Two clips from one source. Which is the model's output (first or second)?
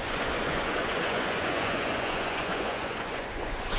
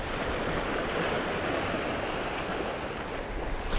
first